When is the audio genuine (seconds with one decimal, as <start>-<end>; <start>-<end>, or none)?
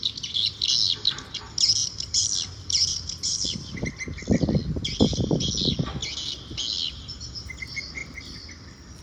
0.0-1.8; 3.8-8.0